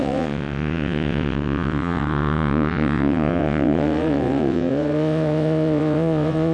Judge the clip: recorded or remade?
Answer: remade